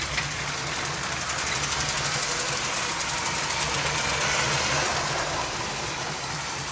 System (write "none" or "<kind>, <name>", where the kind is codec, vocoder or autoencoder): none